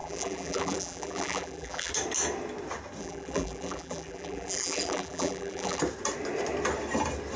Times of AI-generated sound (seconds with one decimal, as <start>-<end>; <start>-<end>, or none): 0.0-1.9; 3.0-5.8